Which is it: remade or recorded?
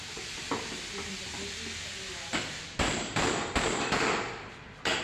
remade